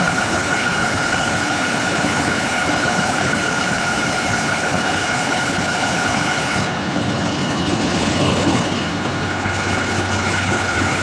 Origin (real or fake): fake